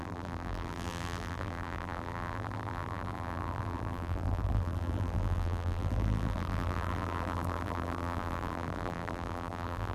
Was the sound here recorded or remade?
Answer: remade